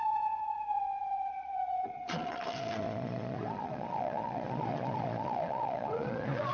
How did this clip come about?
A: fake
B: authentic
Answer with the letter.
A